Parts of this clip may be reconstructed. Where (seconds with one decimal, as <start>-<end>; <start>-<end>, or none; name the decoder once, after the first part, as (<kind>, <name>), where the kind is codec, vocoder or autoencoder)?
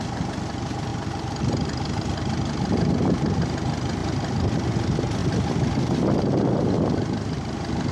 none